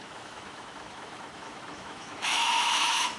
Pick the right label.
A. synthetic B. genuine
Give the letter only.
A